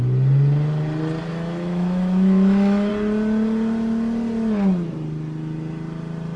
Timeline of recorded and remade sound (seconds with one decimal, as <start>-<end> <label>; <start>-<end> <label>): 0.0-1.3 recorded; 1.3-2.9 remade; 2.9-6.4 recorded